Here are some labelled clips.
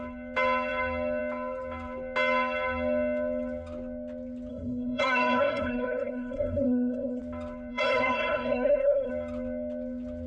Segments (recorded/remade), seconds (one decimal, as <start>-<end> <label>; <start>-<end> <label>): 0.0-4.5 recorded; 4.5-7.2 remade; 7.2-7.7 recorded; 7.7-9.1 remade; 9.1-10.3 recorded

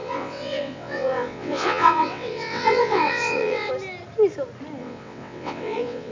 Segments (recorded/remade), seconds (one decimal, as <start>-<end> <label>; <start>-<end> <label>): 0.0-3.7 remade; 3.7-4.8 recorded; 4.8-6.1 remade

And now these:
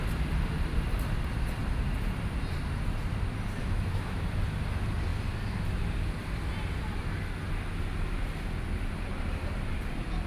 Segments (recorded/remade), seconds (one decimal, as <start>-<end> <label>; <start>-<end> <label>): 0.0-3.6 recorded; 3.6-4.2 remade; 4.2-10.3 recorded